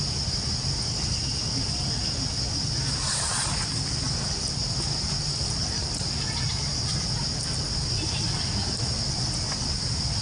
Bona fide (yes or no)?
yes